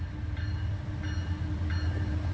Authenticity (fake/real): real